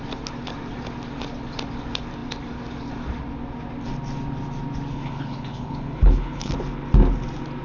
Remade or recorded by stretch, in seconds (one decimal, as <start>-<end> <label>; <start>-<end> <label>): 0.0-4.9 recorded; 4.9-6.5 remade; 6.5-7.6 recorded